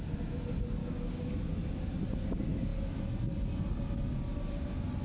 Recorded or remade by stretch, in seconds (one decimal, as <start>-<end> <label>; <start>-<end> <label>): 0.0-0.8 recorded; 0.8-1.3 remade; 1.3-5.0 recorded